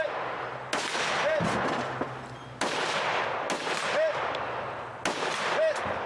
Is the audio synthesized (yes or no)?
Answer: no